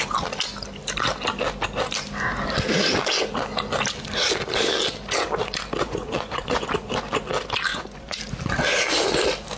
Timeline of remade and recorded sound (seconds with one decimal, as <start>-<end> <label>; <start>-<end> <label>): 0.0-5.8 recorded; 5.8-6.7 remade; 6.7-7.7 recorded; 7.7-8.2 remade; 8.2-9.6 recorded